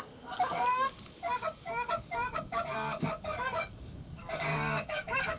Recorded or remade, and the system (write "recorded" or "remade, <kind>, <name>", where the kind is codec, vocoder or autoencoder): remade, codec, DAC